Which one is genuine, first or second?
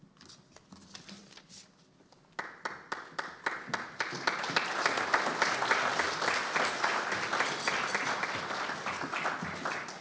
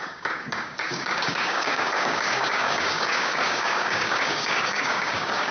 first